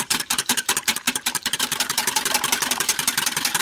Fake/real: fake